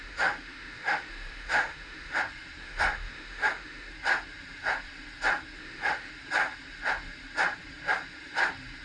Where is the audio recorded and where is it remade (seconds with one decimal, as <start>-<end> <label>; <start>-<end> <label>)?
0.0-2.2 remade; 2.2-2.6 recorded; 2.6-3.9 remade; 3.9-5.6 recorded; 5.6-6.1 remade; 6.1-8.8 recorded